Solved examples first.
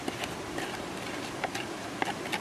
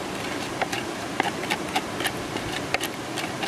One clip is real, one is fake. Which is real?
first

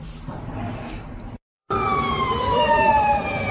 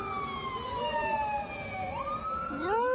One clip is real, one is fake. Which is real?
second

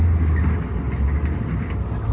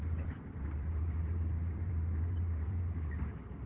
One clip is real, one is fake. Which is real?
first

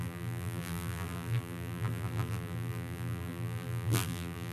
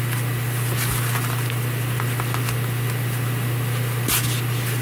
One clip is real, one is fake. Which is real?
second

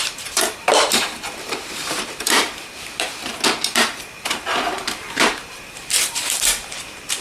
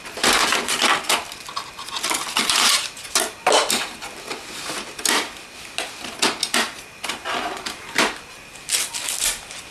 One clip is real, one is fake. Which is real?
second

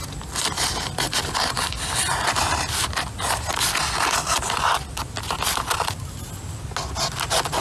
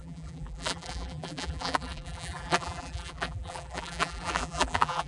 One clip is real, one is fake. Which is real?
first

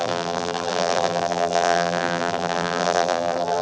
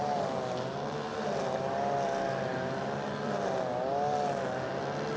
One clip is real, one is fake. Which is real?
second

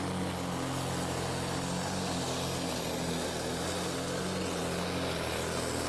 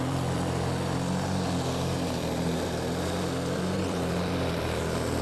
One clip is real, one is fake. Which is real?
first